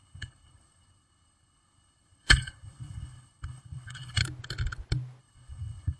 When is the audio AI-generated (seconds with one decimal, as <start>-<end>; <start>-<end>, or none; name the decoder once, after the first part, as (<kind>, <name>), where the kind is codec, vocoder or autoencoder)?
0.0-4.2 (codec, HILCodec); 5.2-6.0